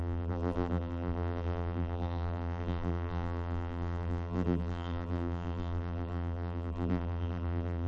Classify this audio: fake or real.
fake